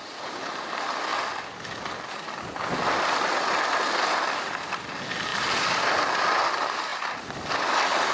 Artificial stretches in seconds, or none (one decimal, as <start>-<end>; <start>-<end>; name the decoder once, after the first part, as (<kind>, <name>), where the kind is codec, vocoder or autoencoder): 0.0-0.5 (vocoder, BigVGAN v2); 5.3-5.9; 6.9-7.5